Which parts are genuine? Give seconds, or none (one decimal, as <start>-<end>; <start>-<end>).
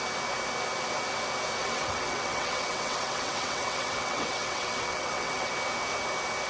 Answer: 0.0-1.6; 5.5-6.5